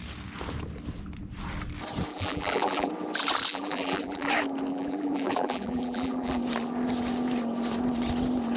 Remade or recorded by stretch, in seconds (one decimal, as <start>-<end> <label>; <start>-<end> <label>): 0.0-2.1 recorded; 2.1-2.9 remade; 2.9-3.5 recorded; 3.5-4.3 remade; 4.3-4.7 recorded; 4.7-6.4 remade; 6.4-8.6 recorded